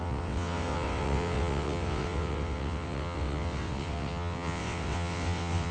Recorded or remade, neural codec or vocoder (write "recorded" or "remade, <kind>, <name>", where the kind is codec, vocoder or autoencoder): remade, vocoder, WaveNeXt